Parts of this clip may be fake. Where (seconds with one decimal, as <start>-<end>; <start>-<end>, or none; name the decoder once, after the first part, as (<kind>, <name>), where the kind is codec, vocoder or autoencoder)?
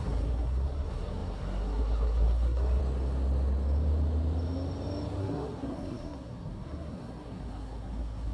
0.0-2.8 (codec, SNAC); 5.2-8.3